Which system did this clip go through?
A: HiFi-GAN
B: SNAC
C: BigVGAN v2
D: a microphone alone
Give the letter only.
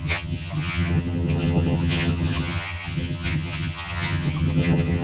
A